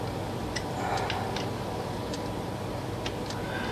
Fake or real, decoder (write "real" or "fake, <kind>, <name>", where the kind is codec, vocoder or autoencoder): real